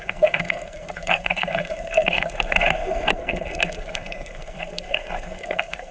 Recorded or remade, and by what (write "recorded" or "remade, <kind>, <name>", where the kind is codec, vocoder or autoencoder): remade, codec, SNAC